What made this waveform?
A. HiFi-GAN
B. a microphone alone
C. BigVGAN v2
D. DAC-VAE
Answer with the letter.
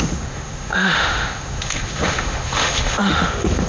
D